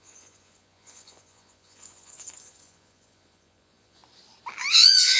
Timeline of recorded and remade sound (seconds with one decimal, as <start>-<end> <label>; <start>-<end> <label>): 0.0-4.0 remade; 4.0-4.7 recorded; 4.7-5.2 remade